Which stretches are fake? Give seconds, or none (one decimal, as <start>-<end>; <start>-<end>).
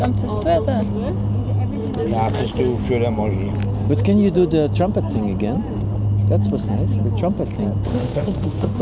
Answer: 7.9-8.8